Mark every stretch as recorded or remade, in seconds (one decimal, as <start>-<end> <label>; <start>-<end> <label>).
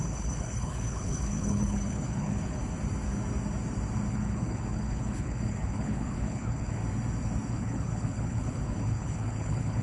0.0-2.6 remade; 2.6-4.1 recorded; 4.1-6.8 remade; 6.8-7.5 recorded; 7.5-9.8 remade